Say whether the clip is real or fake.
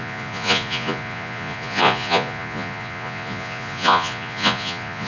fake